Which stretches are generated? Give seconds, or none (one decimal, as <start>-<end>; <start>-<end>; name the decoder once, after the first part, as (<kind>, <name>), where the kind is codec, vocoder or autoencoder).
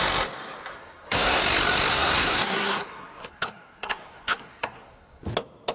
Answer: 0.7-1.4 (codec, SNAC); 1.9-5.3